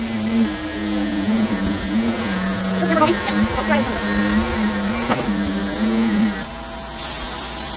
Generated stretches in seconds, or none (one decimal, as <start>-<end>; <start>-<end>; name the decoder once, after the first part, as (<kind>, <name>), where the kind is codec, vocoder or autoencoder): 0.7-3.3 (vocoder, Vocos); 5.6-6.2